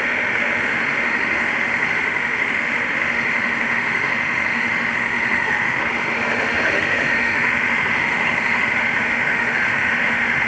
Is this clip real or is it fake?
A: fake